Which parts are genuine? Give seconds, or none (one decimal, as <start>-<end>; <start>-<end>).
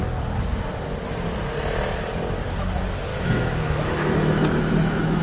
0.0-3.1